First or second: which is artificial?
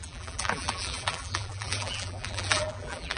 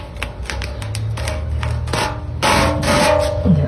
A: first